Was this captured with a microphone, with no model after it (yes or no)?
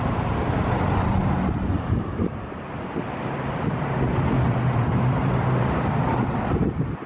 no